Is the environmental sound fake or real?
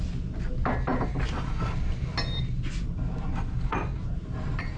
real